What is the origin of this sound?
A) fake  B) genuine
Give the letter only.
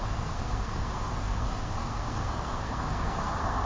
A